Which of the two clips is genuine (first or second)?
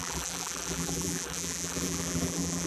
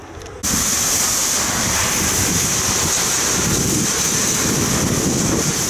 second